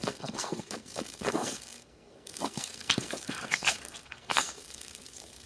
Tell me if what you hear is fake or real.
fake